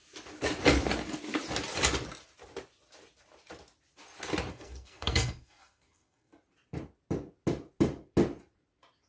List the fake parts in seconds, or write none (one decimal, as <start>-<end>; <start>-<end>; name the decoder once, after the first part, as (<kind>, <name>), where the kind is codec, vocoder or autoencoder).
4.5-6.3 (codec, SNAC)